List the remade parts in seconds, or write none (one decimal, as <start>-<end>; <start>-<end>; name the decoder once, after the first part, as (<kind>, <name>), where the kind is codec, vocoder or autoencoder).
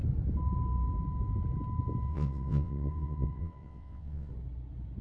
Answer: 2.1-4.3 (vocoder, WaveNeXt)